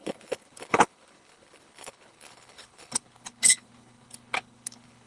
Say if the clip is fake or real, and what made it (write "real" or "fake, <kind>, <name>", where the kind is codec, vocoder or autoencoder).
fake, codec, HILCodec